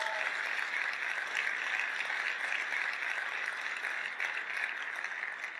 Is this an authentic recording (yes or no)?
yes